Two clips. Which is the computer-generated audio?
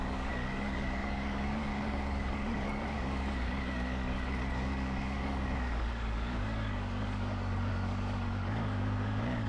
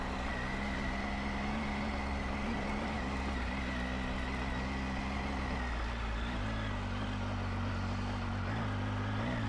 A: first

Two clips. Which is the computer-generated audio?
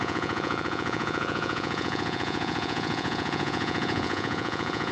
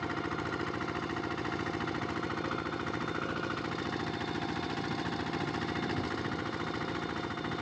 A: first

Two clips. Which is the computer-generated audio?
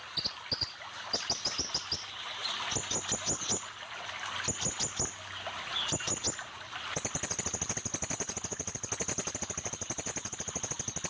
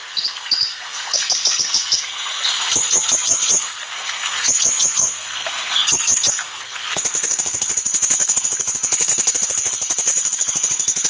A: second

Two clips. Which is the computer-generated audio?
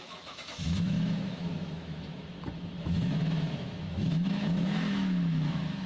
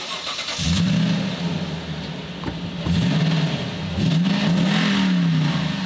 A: first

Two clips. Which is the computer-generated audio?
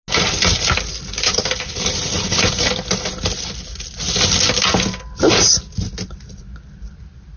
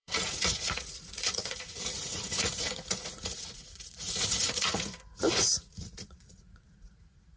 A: second